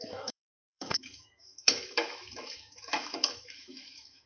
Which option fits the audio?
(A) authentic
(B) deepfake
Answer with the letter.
B